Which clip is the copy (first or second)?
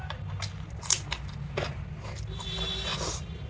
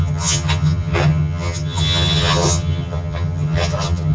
second